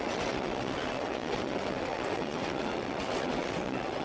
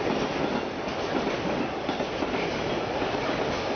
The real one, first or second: second